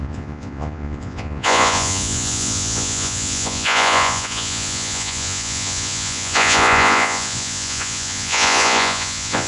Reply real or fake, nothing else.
fake